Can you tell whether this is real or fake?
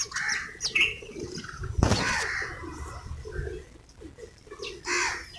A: real